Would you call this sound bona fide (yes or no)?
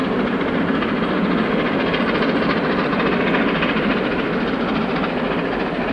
yes